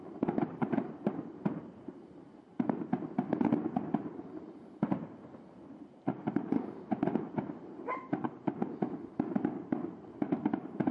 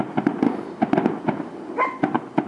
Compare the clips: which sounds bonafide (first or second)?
second